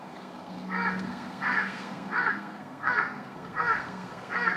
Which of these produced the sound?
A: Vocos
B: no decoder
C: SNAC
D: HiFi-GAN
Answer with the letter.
C